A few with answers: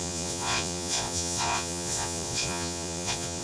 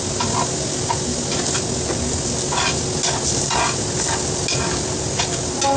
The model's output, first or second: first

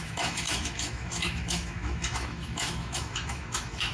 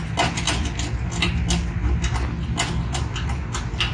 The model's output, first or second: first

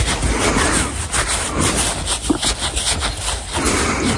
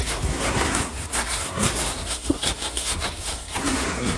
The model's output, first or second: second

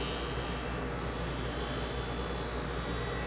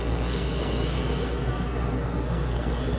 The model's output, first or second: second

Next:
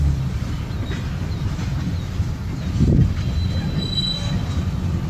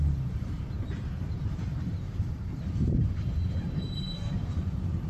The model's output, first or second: second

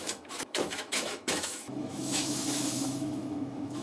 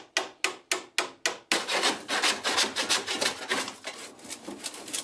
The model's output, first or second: first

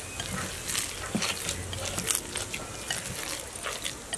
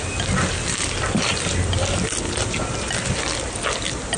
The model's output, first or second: second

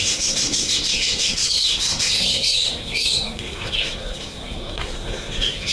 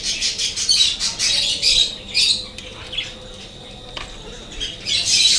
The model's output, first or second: first